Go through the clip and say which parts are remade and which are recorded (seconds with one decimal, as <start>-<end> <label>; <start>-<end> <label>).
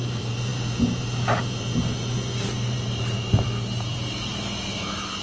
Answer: 0.0-5.2 remade